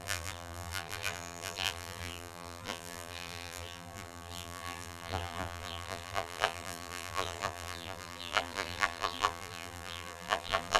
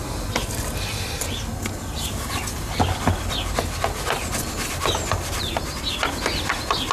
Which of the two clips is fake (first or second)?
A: first